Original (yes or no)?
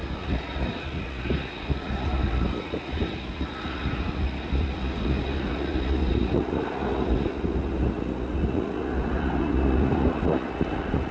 no